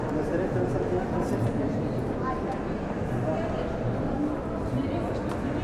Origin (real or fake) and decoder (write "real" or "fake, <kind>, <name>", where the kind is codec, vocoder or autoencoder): real